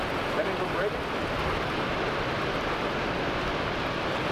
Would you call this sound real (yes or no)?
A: yes